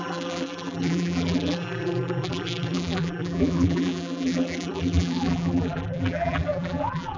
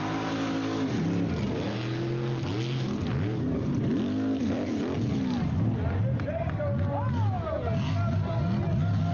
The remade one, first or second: first